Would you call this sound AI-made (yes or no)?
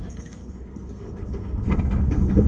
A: yes